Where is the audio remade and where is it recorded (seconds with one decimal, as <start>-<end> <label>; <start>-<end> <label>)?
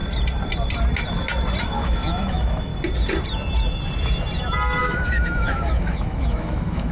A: 0.0-1.6 recorded; 1.6-2.7 remade; 2.7-4.8 recorded; 4.8-6.9 remade